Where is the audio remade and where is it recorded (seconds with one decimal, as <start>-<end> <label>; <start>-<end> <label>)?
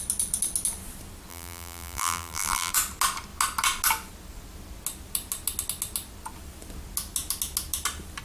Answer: 0.0-1.3 recorded; 1.3-2.7 remade; 2.7-8.2 recorded